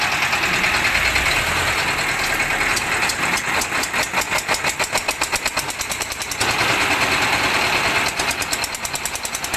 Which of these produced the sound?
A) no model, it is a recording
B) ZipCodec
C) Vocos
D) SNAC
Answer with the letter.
A